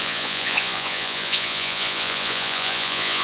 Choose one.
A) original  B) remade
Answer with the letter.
B